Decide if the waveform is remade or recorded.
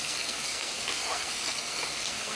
remade